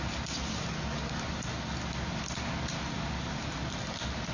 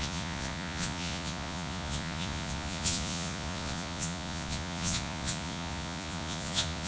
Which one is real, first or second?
first